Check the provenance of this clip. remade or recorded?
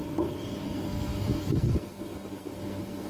remade